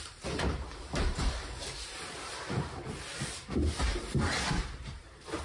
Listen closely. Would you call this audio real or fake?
fake